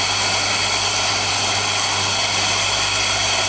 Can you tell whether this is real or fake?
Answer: real